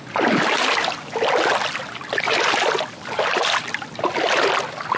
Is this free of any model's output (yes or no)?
yes